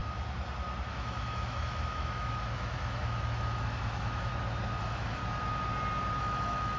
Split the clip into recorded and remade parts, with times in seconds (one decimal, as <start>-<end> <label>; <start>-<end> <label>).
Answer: 0.0-0.9 recorded; 0.9-4.3 remade; 4.3-4.8 recorded; 4.8-5.2 remade; 5.2-6.2 recorded; 6.2-6.8 remade